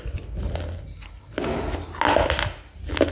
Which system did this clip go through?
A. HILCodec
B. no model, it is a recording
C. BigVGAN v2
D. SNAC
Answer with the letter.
B